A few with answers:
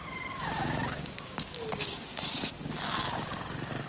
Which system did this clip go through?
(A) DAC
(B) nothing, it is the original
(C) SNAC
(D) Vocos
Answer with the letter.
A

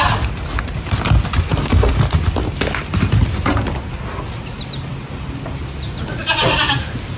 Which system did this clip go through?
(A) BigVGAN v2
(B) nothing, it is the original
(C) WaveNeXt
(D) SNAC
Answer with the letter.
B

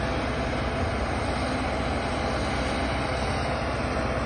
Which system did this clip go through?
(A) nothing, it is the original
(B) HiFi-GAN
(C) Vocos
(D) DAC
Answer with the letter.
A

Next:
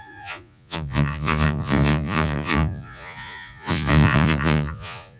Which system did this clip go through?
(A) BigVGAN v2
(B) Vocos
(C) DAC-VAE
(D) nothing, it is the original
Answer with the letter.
B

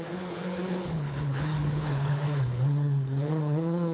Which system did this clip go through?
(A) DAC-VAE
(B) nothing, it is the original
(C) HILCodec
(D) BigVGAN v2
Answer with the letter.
C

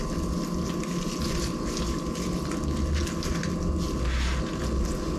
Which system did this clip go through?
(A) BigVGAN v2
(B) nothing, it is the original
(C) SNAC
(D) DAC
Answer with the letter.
B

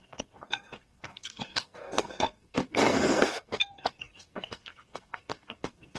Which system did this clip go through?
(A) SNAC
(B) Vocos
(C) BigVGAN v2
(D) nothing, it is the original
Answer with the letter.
A